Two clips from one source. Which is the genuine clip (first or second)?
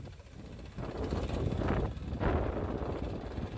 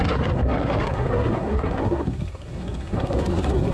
first